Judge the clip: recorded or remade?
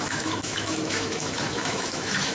remade